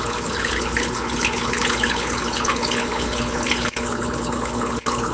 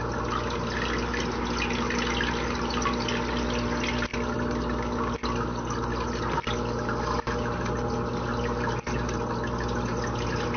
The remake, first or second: first